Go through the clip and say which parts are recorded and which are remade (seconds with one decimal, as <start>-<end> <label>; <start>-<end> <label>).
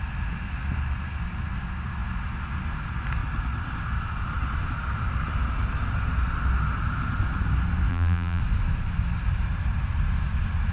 0.0-7.9 recorded; 7.9-8.4 remade; 8.4-10.7 recorded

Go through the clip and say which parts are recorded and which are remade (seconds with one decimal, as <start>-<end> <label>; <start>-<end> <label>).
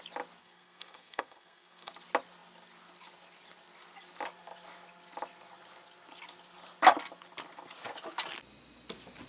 0.0-0.4 recorded; 0.4-1.9 remade; 1.9-9.3 recorded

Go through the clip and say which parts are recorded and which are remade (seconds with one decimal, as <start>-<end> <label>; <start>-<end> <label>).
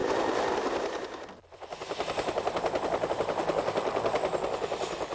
0.0-5.1 recorded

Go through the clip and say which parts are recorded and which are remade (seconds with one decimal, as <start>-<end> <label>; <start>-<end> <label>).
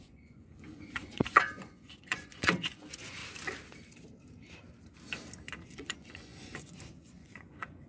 0.0-3.2 remade; 3.2-5.7 recorded; 5.7-7.9 remade